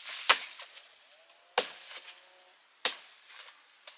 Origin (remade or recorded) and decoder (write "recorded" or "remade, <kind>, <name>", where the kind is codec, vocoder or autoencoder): recorded